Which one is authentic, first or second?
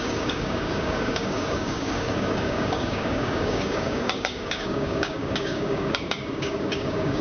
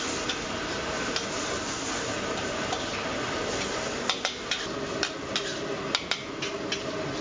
second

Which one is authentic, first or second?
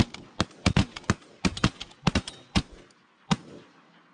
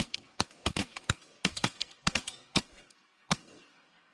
first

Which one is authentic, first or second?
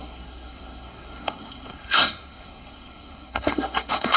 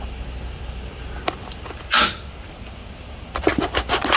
second